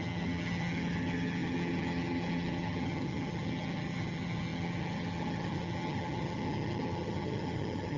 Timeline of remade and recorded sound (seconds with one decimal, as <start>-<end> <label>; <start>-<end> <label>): 0.0-8.0 remade